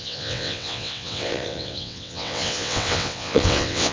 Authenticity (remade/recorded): remade